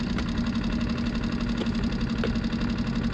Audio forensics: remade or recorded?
recorded